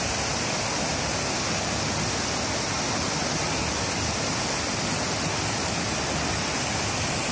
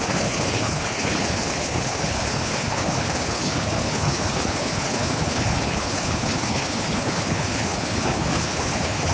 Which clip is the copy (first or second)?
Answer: second